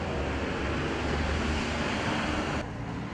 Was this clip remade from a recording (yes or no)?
no